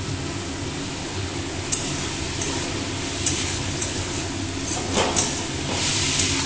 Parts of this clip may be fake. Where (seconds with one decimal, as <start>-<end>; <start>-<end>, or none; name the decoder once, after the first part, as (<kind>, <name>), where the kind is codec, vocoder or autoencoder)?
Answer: 1.0-1.6 (codec, HILCodec); 3.4-4.1